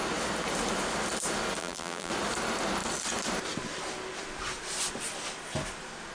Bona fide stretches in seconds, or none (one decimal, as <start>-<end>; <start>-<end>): 0.0-1.6; 2.1-6.1